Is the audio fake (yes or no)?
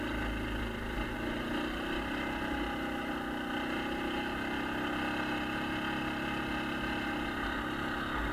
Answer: no